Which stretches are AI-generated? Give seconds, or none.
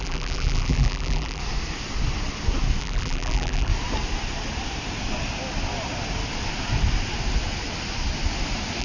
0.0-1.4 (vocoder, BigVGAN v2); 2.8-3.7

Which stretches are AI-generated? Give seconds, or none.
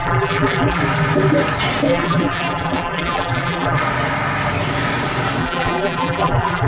0.0-0.8 (vocoder, BigVGAN v2); 1.9-3.8; 5.4-6.7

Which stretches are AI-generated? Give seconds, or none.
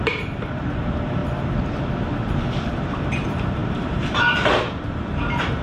0.0-1.2 (vocoder, BigVGAN v2); 2.3-5.6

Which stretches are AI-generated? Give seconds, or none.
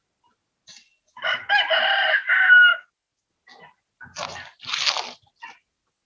2.7-3.3 (vocoder, BigVGAN v2)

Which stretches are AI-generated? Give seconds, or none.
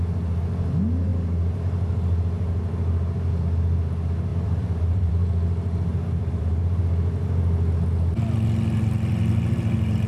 4.3-5.1 (vocoder, BigVGAN v2); 5.9-6.8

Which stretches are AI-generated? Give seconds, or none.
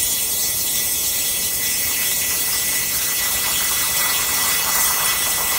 0.0-5.6 (vocoder, BigVGAN v2)